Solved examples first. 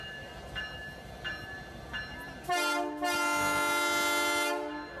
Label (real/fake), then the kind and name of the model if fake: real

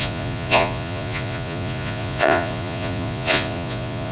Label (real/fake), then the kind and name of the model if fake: fake, vocoder, Vocos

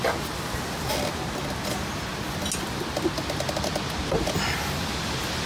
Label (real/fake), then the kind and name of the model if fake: real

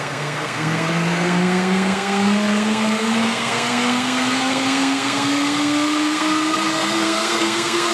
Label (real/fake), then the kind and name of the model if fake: fake, codec, SNAC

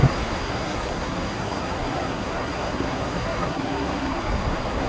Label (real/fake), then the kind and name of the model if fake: fake, codec, SNAC